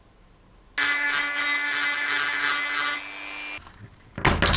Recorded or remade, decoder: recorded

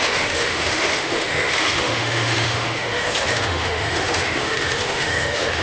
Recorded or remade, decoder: remade, autoencoder, DAC-VAE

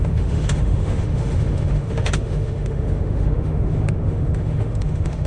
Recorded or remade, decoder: remade, autoencoder, DAC-VAE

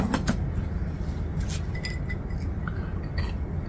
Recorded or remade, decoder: recorded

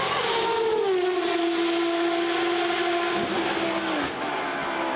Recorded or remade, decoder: recorded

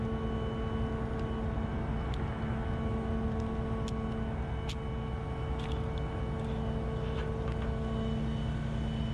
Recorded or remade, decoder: recorded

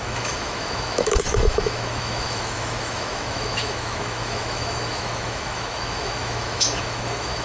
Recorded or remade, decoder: remade, autoencoder, DAC-VAE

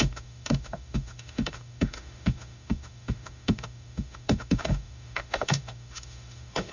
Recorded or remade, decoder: remade, autoencoder, DAC-VAE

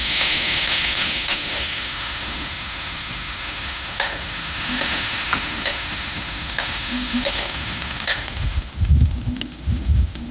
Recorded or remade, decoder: remade, autoencoder, DAC-VAE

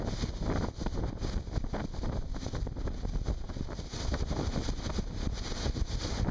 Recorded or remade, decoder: recorded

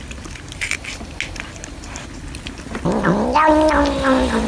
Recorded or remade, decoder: recorded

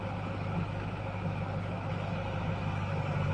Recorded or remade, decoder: remade, autoencoder, DAC-VAE